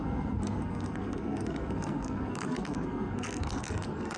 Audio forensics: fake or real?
fake